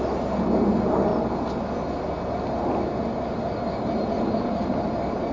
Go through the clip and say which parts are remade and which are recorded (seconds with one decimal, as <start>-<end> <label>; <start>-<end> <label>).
0.0-5.3 recorded